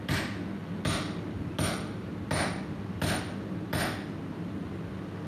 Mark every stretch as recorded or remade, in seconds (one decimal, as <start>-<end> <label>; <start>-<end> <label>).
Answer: 0.0-5.3 recorded